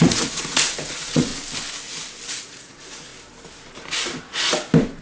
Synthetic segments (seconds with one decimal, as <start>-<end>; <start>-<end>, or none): 0.0-1.3; 2.3-3.1